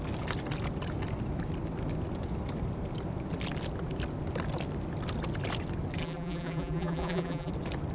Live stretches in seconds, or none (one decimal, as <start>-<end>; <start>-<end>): 0.0-6.0; 7.5-7.9